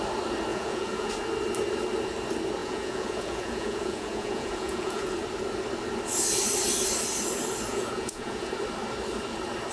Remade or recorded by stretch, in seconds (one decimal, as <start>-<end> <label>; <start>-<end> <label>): 0.0-0.5 recorded; 0.5-1.1 remade; 1.1-2.6 recorded; 2.6-5.1 remade; 5.1-7.7 recorded; 7.7-8.5 remade; 8.5-9.7 recorded